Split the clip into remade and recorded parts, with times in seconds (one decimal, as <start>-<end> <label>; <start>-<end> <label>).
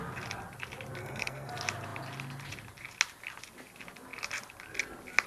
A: 0.0-1.0 recorded; 1.0-1.5 remade; 1.5-5.3 recorded